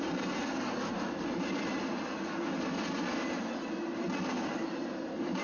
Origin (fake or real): real